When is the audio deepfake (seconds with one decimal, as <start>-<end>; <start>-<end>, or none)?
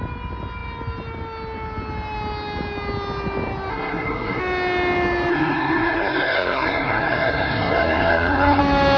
3.7-4.4; 5.3-8.6